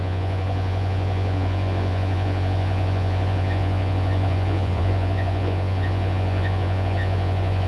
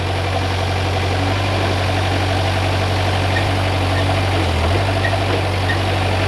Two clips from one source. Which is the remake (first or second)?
first